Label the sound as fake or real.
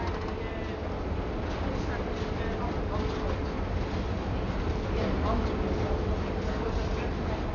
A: real